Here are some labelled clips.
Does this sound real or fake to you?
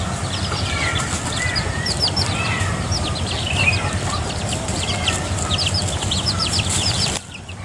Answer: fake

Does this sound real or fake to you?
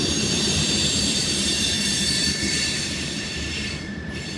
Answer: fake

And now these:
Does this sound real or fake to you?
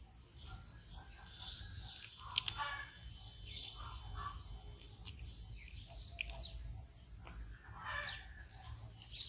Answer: real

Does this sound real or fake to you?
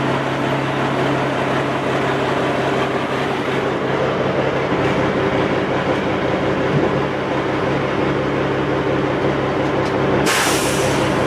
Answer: real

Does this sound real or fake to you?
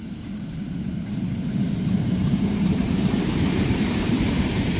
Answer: fake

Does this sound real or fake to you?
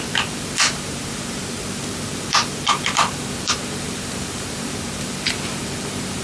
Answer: fake